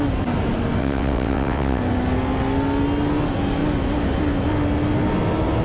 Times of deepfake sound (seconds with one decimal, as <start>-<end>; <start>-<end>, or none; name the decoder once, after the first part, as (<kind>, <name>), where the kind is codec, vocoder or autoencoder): 0.8-1.8 (vocoder, WaveNeXt)